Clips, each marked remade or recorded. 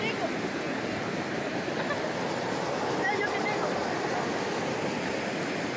recorded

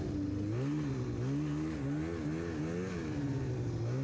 recorded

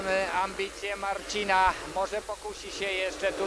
recorded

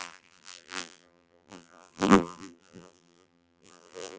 remade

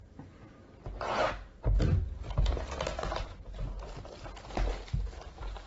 recorded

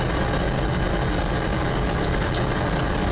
recorded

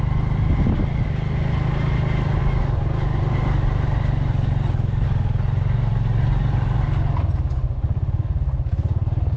recorded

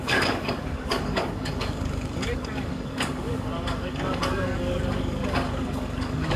remade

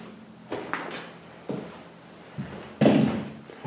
recorded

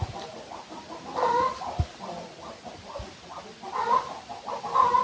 recorded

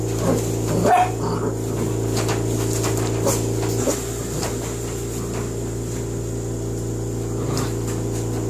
recorded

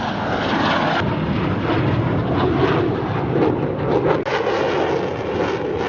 recorded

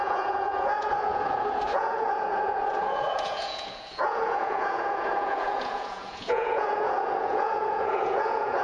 remade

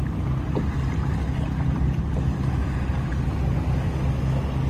recorded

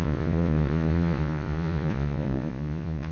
remade